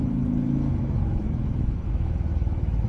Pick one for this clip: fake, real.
fake